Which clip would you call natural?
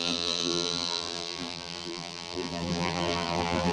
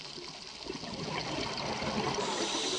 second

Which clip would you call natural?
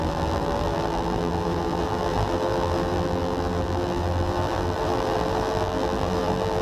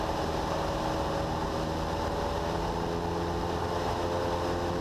second